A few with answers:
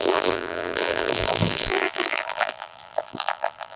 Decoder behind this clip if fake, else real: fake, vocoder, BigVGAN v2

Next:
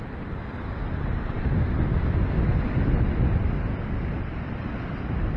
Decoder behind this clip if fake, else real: real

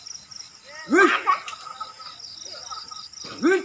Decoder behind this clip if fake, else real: real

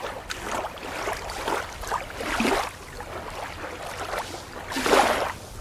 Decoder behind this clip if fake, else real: real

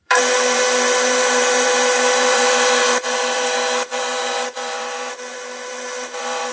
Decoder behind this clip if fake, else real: fake, vocoder, BigVGAN v2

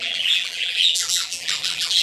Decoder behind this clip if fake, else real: fake, vocoder, BigVGAN v2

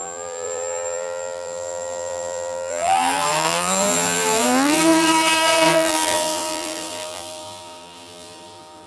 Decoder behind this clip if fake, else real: fake, vocoder, BigVGAN v2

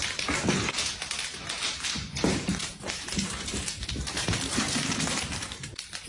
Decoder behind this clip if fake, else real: fake, vocoder, BigVGAN v2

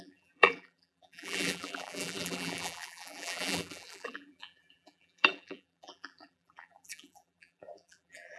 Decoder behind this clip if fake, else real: fake, vocoder, BigVGAN v2